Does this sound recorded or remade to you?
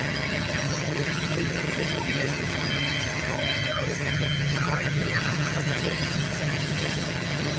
remade